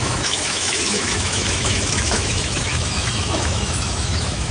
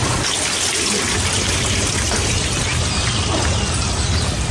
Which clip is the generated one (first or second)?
first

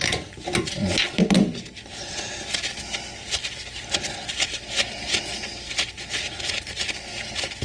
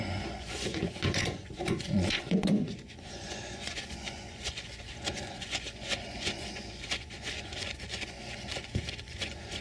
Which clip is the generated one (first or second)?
second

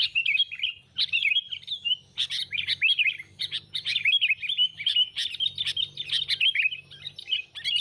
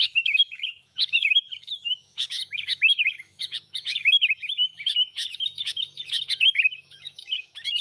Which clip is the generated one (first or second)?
second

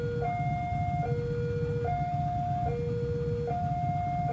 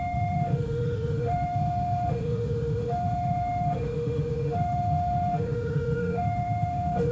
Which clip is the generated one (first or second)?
second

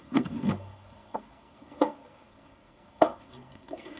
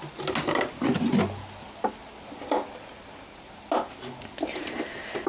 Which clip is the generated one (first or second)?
first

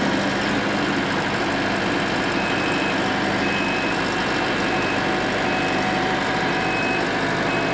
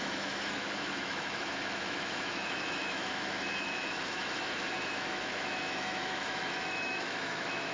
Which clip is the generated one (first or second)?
second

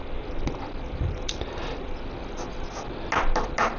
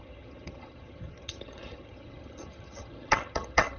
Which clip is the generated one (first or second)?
second